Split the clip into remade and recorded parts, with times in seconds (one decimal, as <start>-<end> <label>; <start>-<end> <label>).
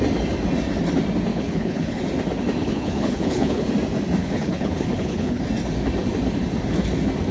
0.0-1.3 recorded; 1.3-2.0 remade; 2.0-2.6 recorded; 2.6-3.7 remade; 3.7-4.2 recorded; 4.2-5.4 remade; 5.4-7.3 recorded